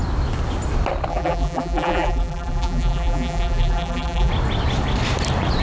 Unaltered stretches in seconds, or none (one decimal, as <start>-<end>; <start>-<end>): 0.0-1.1; 4.3-5.6